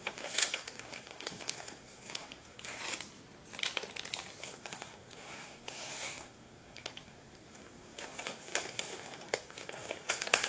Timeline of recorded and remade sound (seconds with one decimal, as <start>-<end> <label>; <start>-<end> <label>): 0.0-2.8 remade; 2.8-4.4 recorded; 4.4-10.5 remade

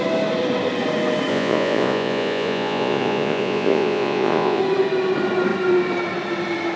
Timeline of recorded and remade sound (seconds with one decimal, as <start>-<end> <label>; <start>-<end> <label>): 0.0-1.3 recorded; 1.3-4.6 remade; 4.6-6.8 recorded

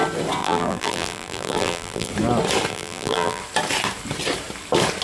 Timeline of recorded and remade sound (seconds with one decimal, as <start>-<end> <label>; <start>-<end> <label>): 0.0-0.4 recorded; 0.4-2.1 remade; 2.1-2.7 recorded; 2.7-3.4 remade; 3.4-5.0 recorded

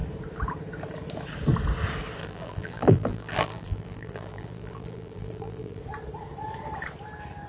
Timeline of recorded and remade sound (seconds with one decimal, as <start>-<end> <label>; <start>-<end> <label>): 0.0-2.2 recorded; 2.2-5.8 remade; 5.8-7.5 recorded